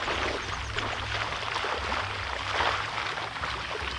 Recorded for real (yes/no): yes